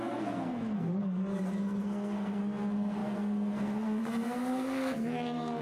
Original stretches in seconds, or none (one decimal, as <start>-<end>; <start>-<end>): none

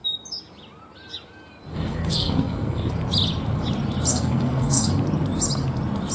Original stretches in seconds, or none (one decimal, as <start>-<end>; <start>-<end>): 0.0-1.7; 2.9-4.1; 4.9-6.1

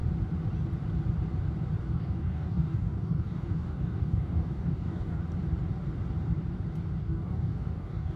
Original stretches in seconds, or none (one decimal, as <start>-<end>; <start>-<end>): 0.0-1.8; 5.2-7.0

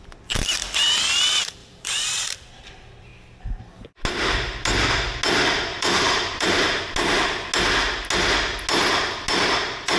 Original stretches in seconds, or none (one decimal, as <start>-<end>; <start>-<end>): 0.0-1.6; 2.6-3.1; 3.7-5.7; 6.8-10.0

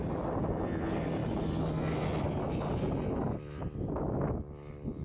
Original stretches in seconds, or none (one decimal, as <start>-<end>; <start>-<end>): 0.0-5.0